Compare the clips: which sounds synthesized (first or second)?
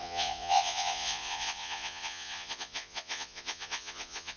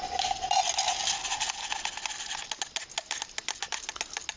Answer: first